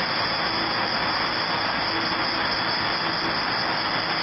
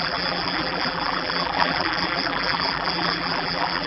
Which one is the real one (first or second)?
first